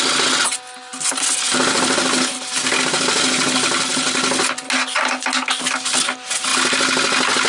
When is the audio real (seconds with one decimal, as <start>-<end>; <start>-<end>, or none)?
0.0-7.5